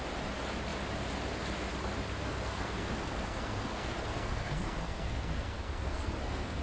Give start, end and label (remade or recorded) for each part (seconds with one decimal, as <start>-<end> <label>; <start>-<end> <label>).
0.0-2.2 recorded; 2.2-6.6 remade